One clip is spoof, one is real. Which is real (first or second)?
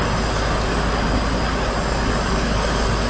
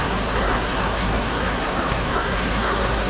first